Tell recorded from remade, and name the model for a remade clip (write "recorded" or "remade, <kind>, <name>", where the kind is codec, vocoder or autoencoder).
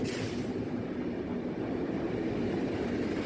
recorded